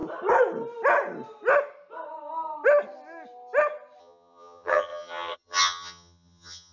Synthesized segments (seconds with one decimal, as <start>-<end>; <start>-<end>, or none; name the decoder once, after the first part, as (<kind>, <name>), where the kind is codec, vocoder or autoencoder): 4.0-6.7 (vocoder, HiFi-GAN)